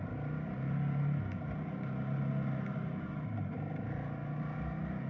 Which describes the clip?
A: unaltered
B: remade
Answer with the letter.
A